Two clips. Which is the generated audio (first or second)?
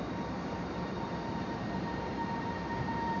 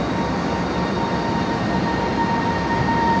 first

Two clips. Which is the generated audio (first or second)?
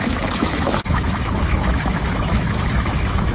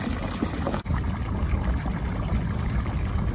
first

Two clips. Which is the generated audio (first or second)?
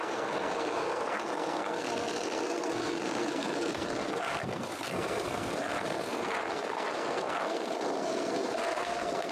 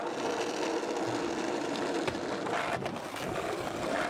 first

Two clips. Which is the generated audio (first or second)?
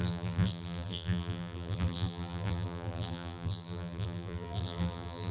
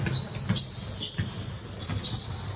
first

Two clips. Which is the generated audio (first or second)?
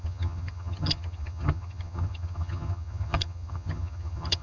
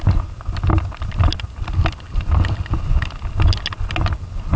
first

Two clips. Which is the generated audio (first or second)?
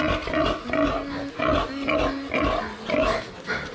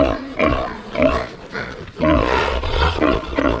second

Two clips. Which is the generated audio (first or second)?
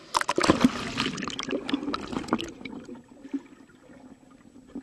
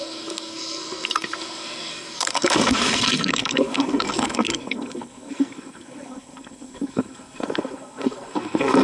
second